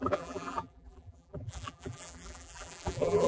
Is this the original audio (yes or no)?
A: no